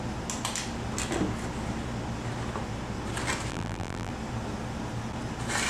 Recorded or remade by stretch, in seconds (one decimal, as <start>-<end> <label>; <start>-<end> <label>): 0.0-3.5 recorded; 3.5-4.1 remade; 4.1-5.7 recorded